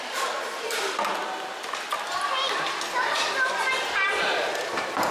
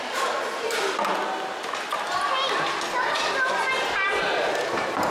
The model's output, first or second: first